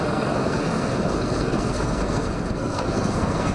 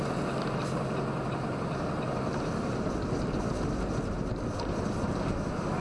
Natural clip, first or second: second